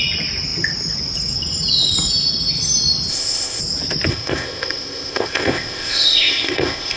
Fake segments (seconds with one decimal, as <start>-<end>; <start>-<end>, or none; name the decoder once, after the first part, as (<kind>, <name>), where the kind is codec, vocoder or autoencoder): 3.1-3.6 (codec, ZipCodec); 4.1-7.0